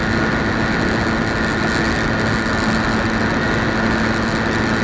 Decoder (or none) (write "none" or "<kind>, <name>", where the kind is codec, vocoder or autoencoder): none